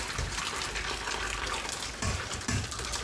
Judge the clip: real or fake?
fake